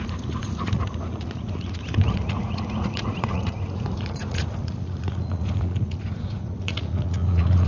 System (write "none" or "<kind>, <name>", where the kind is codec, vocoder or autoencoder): vocoder, Vocos